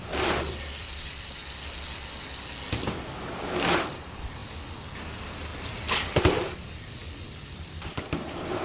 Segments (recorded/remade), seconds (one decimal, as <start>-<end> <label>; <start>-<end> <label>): 0.0-1.4 remade; 1.4-3.7 recorded; 3.7-8.6 remade